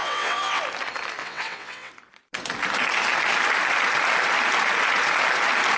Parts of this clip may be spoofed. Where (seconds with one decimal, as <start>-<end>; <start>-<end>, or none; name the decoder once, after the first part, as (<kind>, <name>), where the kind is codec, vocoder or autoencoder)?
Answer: 0.0-0.6 (vocoder, WaveNeXt); 1.2-1.9